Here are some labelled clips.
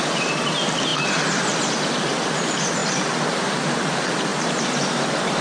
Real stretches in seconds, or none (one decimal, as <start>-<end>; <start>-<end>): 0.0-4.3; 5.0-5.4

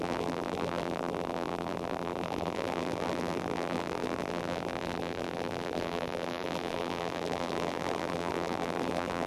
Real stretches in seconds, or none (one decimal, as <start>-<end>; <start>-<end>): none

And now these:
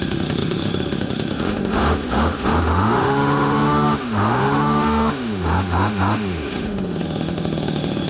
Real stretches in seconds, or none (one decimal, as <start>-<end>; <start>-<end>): none